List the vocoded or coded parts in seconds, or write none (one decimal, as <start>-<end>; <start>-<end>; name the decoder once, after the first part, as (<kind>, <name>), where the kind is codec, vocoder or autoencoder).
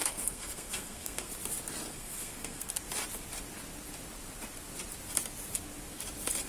0.0-1.3 (codec, SNAC); 1.9-2.7